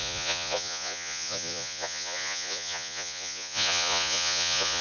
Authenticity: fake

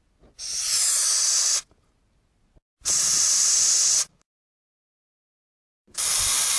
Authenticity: real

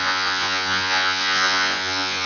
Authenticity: fake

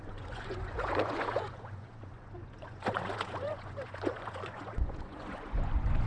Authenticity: fake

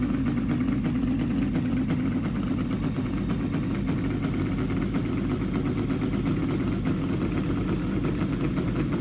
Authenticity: real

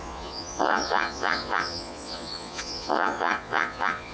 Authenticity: fake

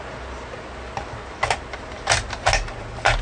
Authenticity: real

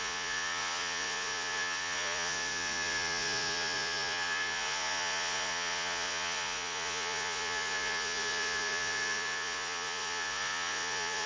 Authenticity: fake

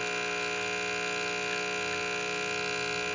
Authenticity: real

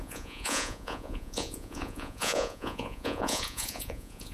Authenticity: fake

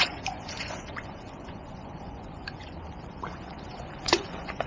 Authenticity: fake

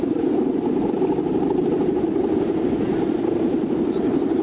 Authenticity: real